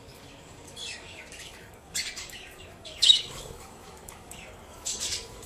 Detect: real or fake fake